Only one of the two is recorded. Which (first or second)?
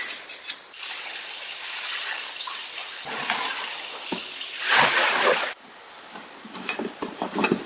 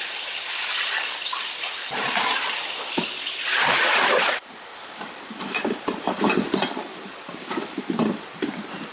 first